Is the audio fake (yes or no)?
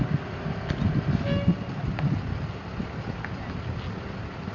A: no